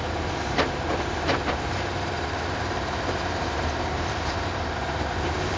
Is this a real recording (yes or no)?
no